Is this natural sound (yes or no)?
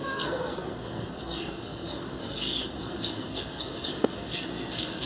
no